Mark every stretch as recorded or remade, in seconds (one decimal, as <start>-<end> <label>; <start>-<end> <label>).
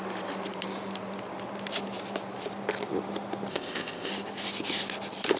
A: 0.0-3.5 recorded; 3.5-4.1 remade; 4.1-5.4 recorded